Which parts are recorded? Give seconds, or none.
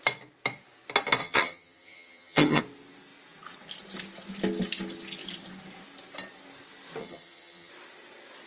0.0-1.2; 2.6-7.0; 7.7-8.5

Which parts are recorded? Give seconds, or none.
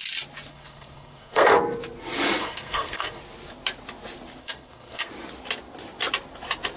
0.0-0.5; 1.6-2.4; 3.2-4.4; 5.1-6.8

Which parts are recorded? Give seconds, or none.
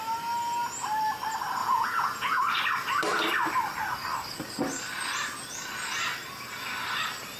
0.0-1.6; 2.4-7.4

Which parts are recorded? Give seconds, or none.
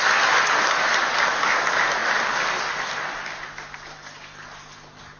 0.0-5.2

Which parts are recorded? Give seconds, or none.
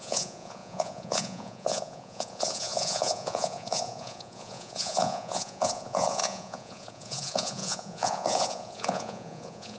none